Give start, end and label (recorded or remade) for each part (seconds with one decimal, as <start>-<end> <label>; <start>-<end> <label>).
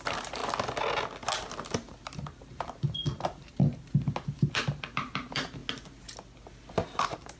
0.0-0.4 remade; 0.4-1.5 recorded; 1.5-3.6 remade; 3.6-4.4 recorded; 4.4-5.6 remade; 5.6-6.7 recorded; 6.7-7.4 remade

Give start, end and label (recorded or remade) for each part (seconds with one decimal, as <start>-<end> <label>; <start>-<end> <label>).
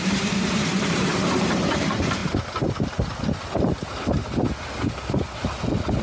0.0-1.1 remade; 1.1-1.8 recorded; 1.8-2.2 remade; 2.2-6.0 recorded